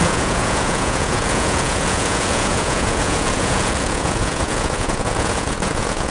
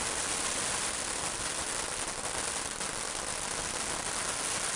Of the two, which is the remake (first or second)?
first